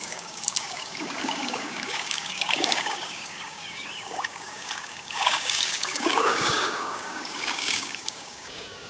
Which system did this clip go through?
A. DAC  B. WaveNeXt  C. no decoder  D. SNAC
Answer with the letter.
A